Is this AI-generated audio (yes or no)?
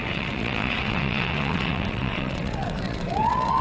yes